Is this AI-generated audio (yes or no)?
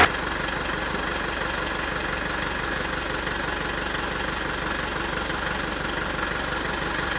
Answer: no